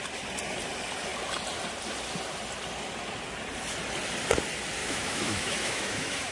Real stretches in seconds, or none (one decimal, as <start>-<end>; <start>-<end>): 0.0-4.8